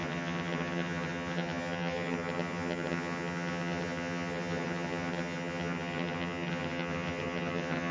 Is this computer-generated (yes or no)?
yes